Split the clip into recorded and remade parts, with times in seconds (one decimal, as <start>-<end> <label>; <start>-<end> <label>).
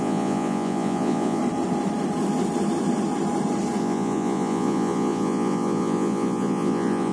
0.0-1.4 remade; 1.4-3.8 recorded; 3.8-7.1 remade